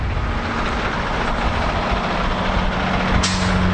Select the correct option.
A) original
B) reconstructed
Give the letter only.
A